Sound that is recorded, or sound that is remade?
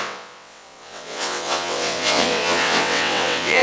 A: remade